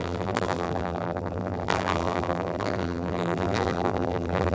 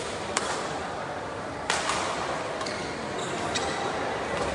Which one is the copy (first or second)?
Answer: first